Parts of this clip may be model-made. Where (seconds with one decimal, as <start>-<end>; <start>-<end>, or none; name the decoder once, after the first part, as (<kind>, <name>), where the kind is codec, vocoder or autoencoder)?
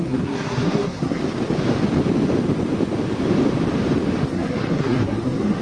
0.0-1.2 (codec, SNAC); 4.2-5.6